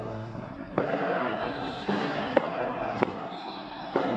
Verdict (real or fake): fake